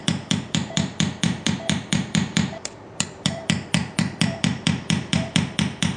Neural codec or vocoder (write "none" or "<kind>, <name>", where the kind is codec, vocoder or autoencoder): vocoder, BigVGAN v2